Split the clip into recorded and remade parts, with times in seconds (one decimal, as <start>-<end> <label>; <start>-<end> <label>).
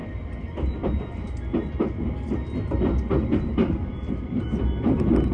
0.0-5.3 recorded